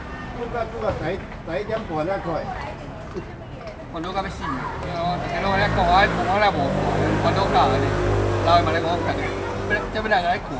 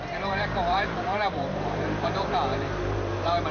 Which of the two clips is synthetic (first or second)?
second